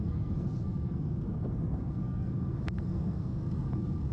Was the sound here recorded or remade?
remade